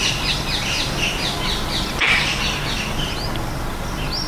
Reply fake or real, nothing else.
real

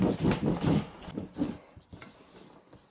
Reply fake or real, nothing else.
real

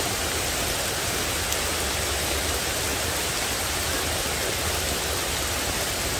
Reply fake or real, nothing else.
real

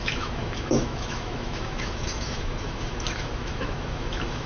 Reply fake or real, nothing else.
fake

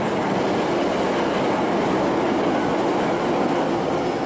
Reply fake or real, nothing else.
real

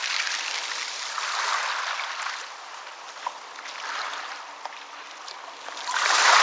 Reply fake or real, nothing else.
real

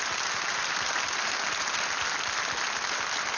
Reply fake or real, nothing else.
real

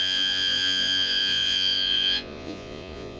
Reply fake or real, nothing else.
fake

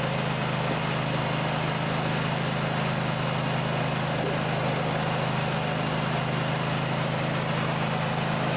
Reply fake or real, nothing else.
real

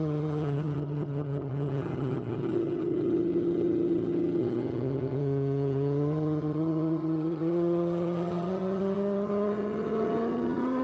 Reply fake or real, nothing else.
fake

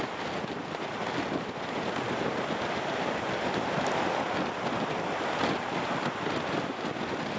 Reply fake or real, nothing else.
real